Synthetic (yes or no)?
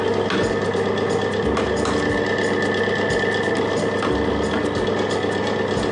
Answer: no